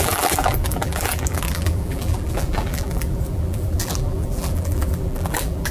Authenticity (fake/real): fake